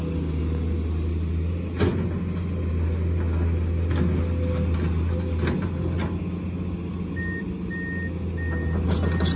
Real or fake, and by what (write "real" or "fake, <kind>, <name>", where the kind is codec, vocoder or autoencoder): real